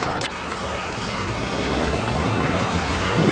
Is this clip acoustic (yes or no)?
no